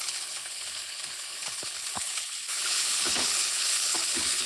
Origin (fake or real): fake